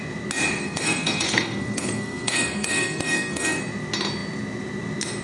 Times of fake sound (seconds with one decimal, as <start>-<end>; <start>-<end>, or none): 0.5-3.6